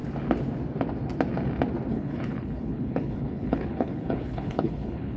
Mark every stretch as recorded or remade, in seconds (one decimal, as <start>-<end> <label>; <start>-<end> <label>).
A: 0.0-1.9 recorded; 1.9-5.2 remade